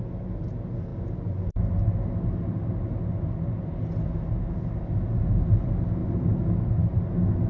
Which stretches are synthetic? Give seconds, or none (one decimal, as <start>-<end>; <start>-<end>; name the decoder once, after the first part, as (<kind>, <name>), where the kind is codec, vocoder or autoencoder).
none